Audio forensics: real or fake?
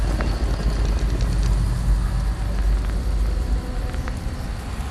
real